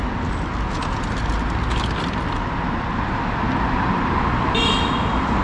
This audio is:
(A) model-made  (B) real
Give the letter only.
B